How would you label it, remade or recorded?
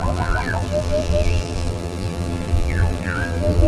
remade